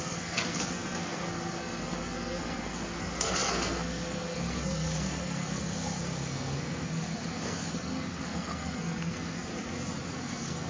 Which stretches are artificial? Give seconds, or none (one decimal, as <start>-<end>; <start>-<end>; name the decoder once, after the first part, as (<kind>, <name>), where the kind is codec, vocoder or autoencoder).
0.0-9.5 (codec, SNAC); 10.1-10.7